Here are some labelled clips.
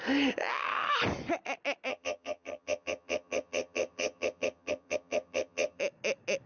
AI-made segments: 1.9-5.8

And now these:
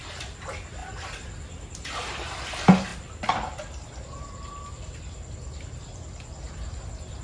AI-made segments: none

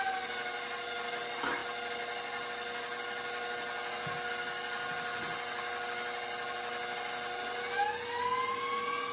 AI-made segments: none